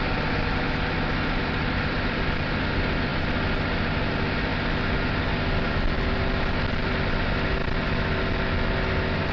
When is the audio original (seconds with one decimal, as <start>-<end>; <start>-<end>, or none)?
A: 0.0-9.3